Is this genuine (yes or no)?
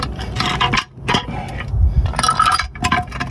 yes